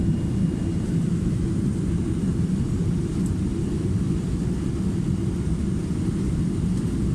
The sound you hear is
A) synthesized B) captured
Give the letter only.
B